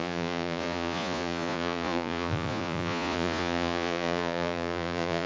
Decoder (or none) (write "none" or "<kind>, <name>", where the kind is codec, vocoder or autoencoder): vocoder, Vocos